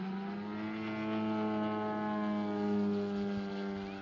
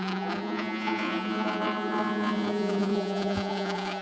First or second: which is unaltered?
first